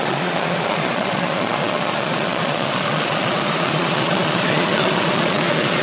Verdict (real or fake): fake